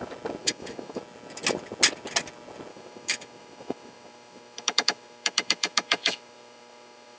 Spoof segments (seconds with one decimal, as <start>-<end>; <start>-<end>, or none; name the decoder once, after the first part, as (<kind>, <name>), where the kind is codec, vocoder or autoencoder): 0.4-1.0 (autoencoder, DAC-VAE); 2.7-7.2